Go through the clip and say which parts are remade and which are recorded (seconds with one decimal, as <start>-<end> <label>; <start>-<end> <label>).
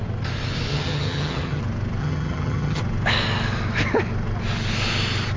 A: 0.0-0.7 recorded; 0.7-1.6 remade; 1.6-2.0 recorded; 2.0-2.8 remade; 2.8-5.4 recorded